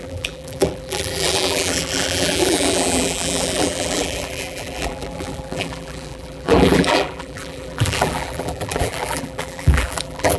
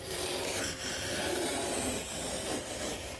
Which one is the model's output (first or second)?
first